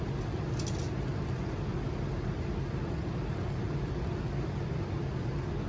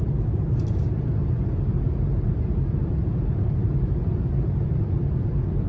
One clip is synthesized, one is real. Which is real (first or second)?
first